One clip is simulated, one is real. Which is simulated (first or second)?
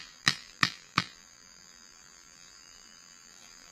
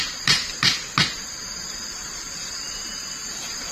first